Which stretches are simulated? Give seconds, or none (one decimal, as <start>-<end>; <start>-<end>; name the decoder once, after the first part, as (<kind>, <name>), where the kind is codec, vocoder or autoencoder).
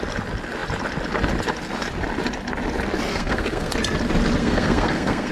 3.1-3.7 (codec, SNAC); 4.4-5.3